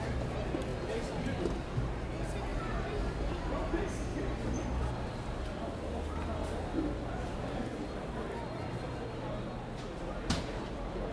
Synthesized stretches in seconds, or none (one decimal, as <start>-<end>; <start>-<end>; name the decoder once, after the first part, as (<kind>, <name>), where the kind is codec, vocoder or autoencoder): 0.7-1.9 (vocoder, BigVGAN v2); 2.5-3.1; 4.1-5.5